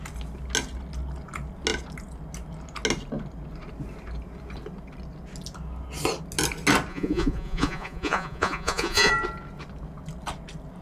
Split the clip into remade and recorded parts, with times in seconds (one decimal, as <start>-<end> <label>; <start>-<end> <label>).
0.0-6.9 recorded; 6.9-9.1 remade; 9.1-10.8 recorded